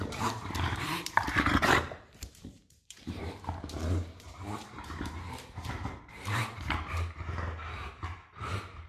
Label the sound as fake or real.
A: fake